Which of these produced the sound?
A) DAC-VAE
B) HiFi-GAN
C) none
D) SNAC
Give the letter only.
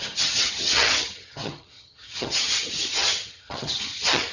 B